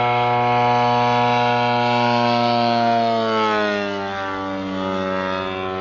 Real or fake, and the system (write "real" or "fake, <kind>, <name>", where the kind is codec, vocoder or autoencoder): real